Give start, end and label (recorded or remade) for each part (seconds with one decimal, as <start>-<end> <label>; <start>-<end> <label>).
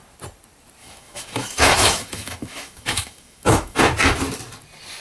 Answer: 0.0-0.8 recorded; 0.8-3.8 remade; 3.8-5.0 recorded